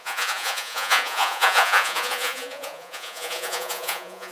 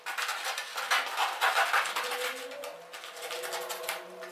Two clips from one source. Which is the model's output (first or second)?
first